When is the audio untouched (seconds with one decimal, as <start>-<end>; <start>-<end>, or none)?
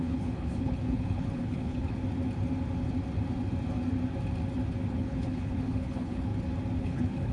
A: 2.0-4.9; 6.3-6.8